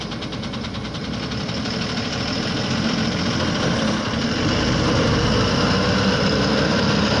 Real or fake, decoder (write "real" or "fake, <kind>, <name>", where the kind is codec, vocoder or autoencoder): fake, vocoder, BigVGAN v2